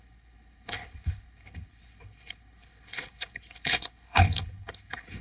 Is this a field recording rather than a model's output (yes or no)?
no